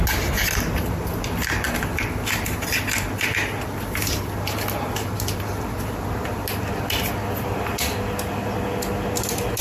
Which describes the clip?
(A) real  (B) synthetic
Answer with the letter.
A